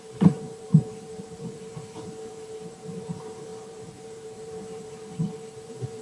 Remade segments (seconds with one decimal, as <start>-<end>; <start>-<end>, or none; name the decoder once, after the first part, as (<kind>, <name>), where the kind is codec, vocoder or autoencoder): 0.0-6.0 (vocoder, BigVGAN v2)